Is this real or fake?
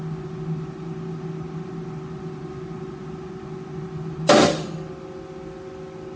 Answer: real